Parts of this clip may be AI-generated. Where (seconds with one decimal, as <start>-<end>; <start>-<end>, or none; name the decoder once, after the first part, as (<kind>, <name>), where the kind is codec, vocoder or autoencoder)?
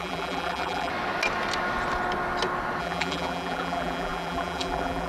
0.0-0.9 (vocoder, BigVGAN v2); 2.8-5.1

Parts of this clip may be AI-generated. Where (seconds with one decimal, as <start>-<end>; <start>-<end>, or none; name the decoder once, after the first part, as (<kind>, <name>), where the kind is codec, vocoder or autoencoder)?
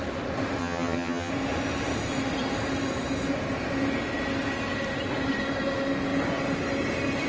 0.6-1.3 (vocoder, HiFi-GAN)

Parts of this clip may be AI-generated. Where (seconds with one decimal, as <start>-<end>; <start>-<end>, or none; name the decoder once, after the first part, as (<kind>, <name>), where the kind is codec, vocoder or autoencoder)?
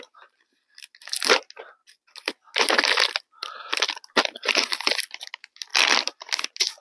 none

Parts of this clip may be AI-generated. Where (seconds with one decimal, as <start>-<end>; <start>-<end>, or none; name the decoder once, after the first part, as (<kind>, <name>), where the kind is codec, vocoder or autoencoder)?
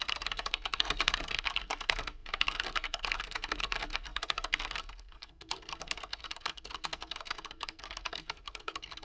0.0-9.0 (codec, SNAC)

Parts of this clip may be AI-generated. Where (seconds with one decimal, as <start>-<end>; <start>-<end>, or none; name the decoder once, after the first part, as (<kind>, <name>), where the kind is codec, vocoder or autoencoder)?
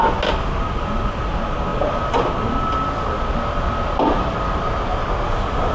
none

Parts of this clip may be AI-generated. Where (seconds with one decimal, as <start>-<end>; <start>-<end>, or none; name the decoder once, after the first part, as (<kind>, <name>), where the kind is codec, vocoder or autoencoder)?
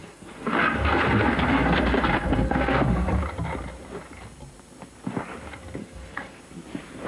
0.0-3.1 (codec, SNAC); 5.8-6.4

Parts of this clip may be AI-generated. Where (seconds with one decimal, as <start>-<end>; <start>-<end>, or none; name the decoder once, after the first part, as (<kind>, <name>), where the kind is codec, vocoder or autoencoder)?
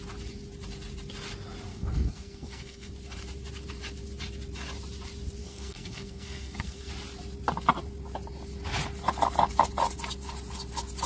1.7-2.9 (codec, SNAC); 5.4-6.9